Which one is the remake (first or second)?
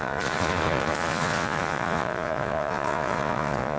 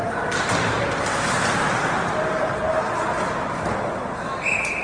first